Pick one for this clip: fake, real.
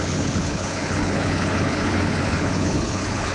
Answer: fake